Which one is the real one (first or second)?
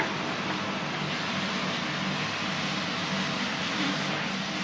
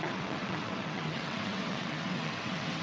first